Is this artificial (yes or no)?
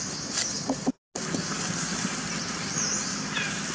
no